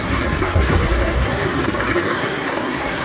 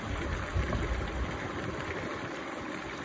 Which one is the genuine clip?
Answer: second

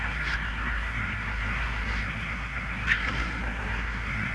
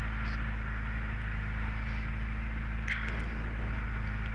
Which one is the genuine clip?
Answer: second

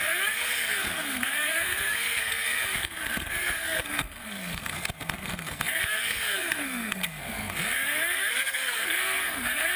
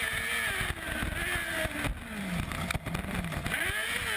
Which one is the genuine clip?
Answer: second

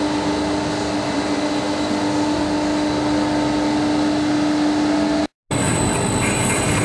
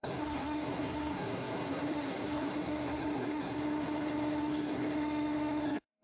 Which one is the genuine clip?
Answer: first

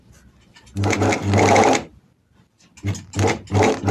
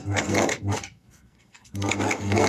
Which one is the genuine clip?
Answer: first